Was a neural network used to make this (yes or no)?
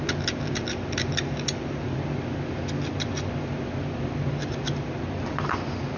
no